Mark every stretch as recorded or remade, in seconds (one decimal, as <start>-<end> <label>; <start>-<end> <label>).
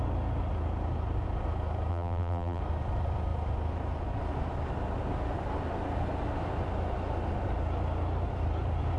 0.0-1.9 recorded; 1.9-2.6 remade; 2.6-9.0 recorded